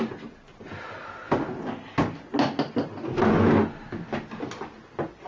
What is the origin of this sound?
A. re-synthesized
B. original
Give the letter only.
B